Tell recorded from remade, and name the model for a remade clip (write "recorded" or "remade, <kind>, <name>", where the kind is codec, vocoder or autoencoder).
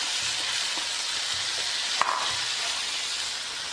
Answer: recorded